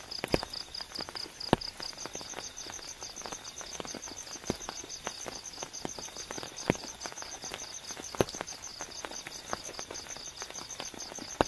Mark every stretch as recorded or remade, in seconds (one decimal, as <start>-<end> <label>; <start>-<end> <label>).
0.0-6.8 recorded; 6.8-7.4 remade; 7.4-11.5 recorded